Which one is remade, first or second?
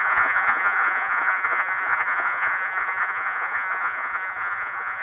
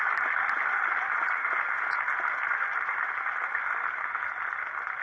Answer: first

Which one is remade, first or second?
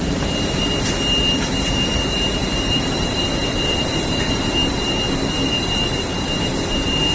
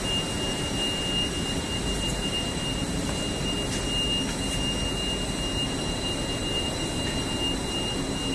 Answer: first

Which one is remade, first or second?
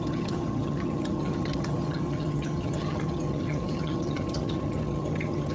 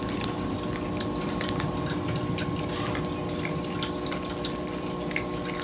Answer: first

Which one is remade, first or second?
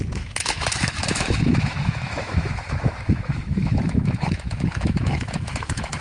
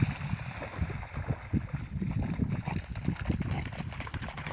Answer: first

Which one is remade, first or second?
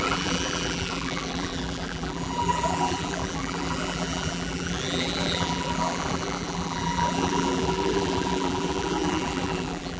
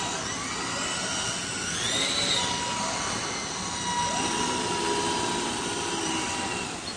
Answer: first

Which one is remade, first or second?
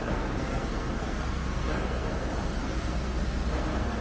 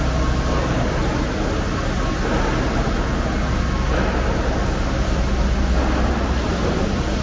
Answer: first